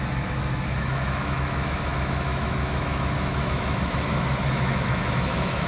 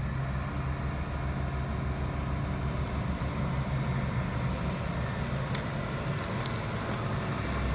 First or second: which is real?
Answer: second